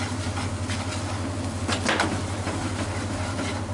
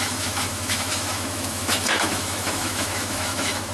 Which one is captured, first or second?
first